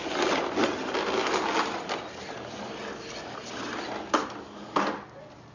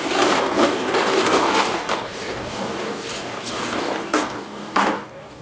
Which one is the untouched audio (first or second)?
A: first